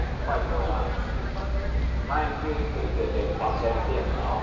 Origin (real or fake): real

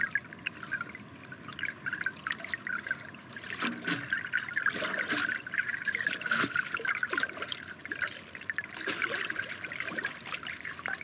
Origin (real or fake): real